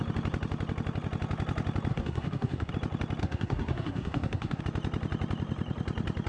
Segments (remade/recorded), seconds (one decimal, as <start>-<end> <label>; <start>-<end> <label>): 0.0-1.9 recorded; 1.9-2.7 remade; 2.7-3.2 recorded; 3.2-4.6 remade; 4.6-6.3 recorded